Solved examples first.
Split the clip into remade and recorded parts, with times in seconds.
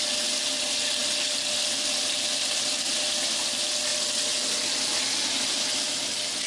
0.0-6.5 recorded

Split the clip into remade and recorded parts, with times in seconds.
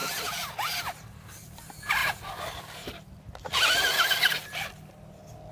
0.0-5.5 recorded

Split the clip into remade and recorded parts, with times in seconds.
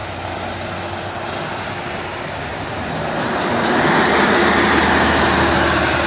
0.0-6.1 recorded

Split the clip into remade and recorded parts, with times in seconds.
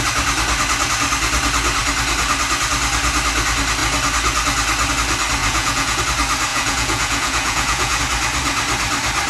0.0-5.4 recorded; 5.4-6.0 remade; 6.0-6.5 recorded; 6.5-8.0 remade; 8.0-9.3 recorded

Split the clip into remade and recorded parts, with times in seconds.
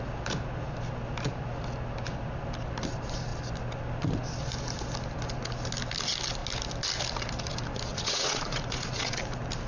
0.0-7.9 recorded; 7.9-9.2 remade; 9.2-9.7 recorded